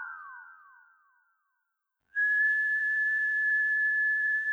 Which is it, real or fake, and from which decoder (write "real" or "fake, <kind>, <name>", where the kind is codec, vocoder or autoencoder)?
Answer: fake, vocoder, BigVGAN v2